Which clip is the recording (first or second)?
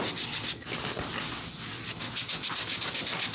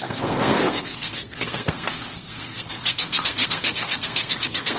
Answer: first